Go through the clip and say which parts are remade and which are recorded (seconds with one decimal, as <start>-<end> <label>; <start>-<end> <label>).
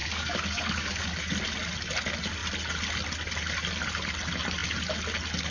0.0-1.3 remade; 1.3-5.5 recorded